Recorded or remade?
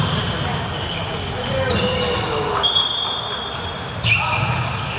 recorded